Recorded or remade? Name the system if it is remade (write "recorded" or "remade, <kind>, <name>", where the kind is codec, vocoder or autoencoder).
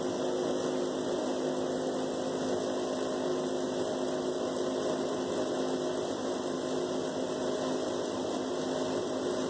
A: recorded